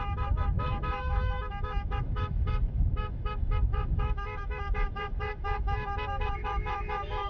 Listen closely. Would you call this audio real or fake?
fake